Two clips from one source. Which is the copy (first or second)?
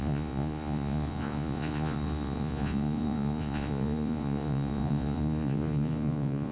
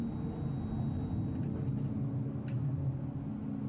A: first